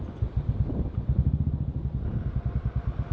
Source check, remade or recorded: recorded